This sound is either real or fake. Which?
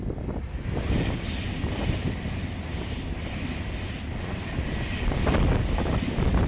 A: real